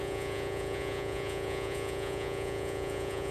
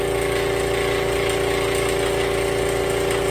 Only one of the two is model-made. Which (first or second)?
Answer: first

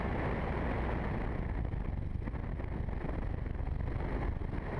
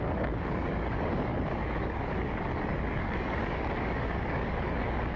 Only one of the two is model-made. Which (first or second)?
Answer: second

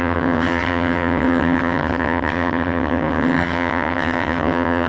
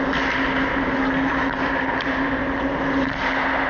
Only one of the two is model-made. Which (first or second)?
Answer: first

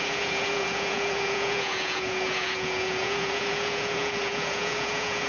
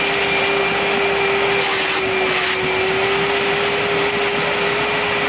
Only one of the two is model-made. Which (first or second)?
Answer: first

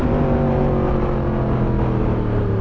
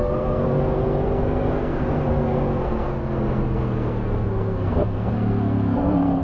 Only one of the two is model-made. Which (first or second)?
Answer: second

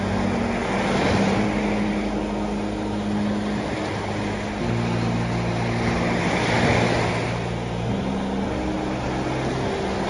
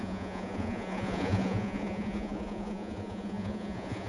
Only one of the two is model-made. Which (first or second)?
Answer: second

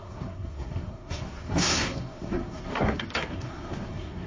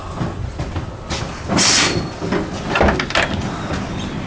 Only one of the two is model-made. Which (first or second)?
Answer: first